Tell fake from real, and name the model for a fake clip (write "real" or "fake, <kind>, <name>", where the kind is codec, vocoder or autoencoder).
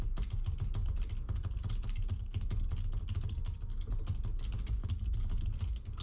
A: real